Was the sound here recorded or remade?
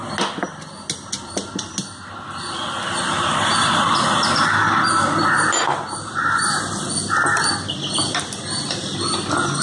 recorded